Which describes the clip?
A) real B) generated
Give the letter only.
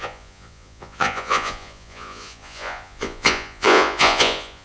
B